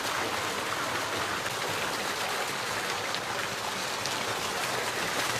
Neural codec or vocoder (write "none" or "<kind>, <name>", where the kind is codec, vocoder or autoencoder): none